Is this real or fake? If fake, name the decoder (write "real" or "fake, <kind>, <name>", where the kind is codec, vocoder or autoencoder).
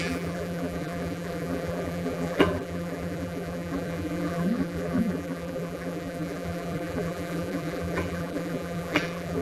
fake, vocoder, BigVGAN v2